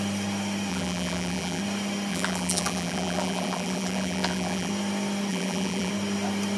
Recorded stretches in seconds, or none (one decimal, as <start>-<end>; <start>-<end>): 0.0-0.7; 1.6-2.1; 4.7-5.3; 5.9-6.6